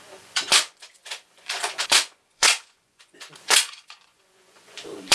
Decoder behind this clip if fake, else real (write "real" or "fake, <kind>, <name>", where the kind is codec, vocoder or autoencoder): fake, vocoder, Vocos